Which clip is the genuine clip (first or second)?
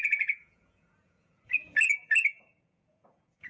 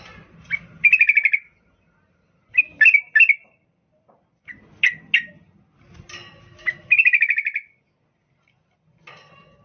second